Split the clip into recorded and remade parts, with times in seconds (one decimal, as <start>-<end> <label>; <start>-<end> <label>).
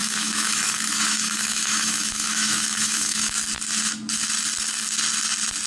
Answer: 0.0-3.4 remade; 3.4-5.7 recorded